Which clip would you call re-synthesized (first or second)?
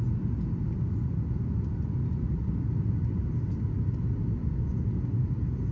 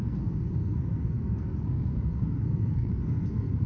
second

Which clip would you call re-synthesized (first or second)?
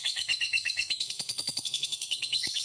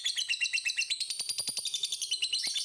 first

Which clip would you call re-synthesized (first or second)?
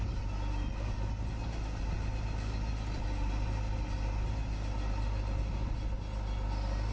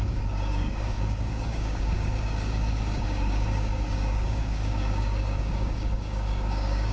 second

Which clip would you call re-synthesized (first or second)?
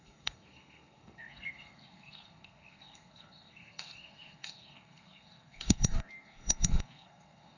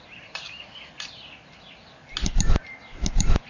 first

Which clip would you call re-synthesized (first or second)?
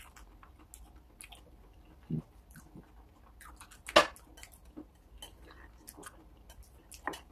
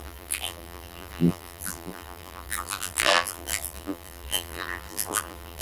second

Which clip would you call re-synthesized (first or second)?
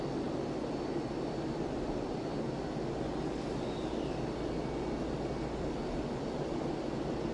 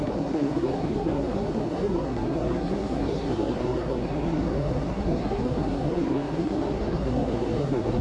second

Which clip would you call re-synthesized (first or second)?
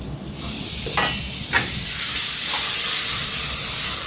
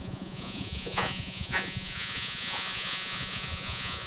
second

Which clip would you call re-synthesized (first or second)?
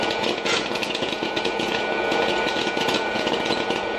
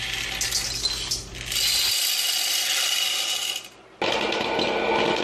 first